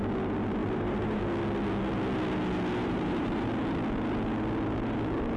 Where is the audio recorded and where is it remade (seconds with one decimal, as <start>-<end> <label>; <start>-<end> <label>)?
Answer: 0.0-0.6 recorded; 0.6-1.2 remade; 1.2-2.8 recorded; 2.8-3.5 remade; 3.5-5.4 recorded